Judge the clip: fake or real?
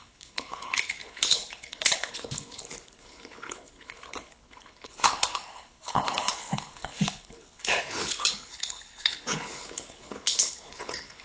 fake